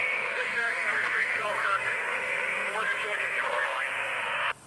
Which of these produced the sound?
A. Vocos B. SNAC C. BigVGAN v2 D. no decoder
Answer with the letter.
B